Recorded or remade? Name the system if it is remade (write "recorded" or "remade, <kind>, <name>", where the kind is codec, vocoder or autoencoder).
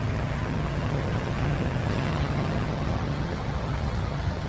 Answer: remade, vocoder, HiFi-GAN